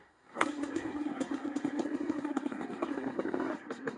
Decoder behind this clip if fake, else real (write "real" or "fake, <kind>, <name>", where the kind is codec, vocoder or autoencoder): fake, codec, SNAC